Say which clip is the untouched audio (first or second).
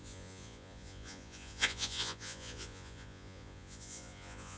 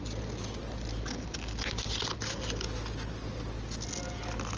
second